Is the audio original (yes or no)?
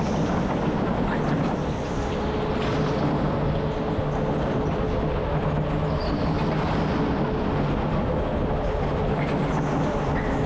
yes